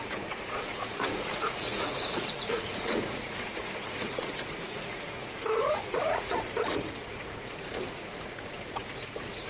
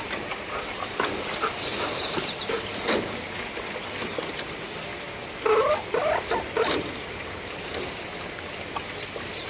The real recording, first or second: second